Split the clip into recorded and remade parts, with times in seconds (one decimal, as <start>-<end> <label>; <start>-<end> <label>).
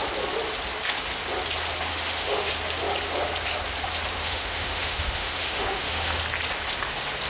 0.0-1.9 recorded; 1.9-2.5 remade; 2.5-4.2 recorded; 4.2-6.2 remade; 6.2-7.3 recorded